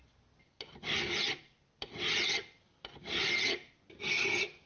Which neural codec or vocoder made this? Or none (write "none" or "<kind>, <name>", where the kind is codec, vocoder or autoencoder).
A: none